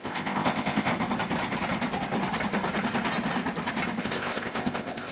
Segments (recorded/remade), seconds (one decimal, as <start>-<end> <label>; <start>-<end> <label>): 0.0-0.9 remade; 0.9-4.0 recorded; 4.0-5.1 remade